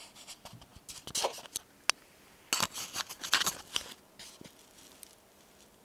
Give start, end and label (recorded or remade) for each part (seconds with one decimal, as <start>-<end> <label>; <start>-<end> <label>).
0.0-5.8 recorded